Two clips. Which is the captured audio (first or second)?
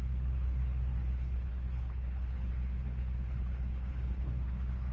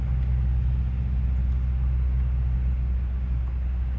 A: second